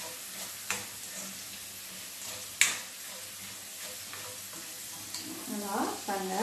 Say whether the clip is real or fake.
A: real